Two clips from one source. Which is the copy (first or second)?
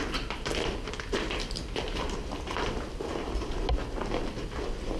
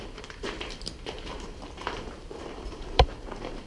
second